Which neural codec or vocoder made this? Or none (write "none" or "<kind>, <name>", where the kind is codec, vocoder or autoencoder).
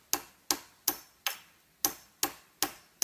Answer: none